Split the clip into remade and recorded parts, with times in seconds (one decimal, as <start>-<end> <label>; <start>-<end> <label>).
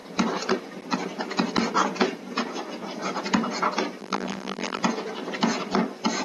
0.0-4.0 recorded; 4.0-4.8 remade; 4.8-6.2 recorded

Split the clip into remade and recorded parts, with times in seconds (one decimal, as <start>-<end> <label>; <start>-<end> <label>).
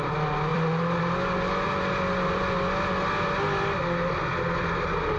0.0-0.5 recorded; 0.5-1.0 remade; 1.0-5.2 recorded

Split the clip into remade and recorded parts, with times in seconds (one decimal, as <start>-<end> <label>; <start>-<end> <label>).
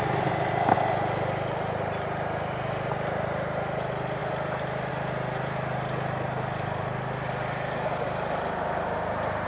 0.0-4.2 recorded; 4.2-4.9 remade; 4.9-9.5 recorded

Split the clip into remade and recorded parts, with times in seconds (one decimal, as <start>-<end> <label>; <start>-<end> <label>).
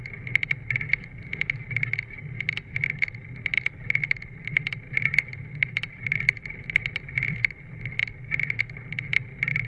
0.0-1.3 remade; 1.3-3.3 recorded; 3.3-8.0 remade; 8.0-8.7 recorded; 8.7-9.7 remade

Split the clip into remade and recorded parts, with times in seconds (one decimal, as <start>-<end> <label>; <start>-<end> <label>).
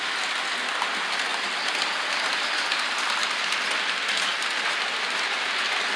0.0-1.3 recorded; 1.3-2.4 remade; 2.4-6.0 recorded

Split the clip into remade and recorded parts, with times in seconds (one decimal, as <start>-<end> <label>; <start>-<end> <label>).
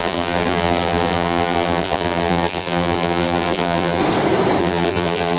0.0-4.0 remade; 4.0-4.6 recorded; 4.6-5.4 remade